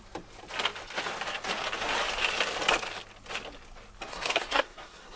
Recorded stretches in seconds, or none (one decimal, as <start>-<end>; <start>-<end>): 0.0-4.1